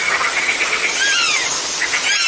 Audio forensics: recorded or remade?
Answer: recorded